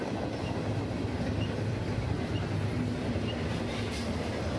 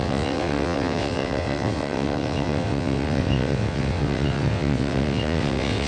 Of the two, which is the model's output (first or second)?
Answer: second